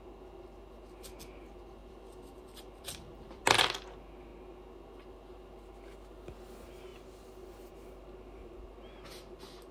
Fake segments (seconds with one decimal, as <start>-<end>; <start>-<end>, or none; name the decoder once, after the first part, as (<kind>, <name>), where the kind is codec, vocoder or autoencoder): 1.8-3.7 (vocoder, BigVGAN v2)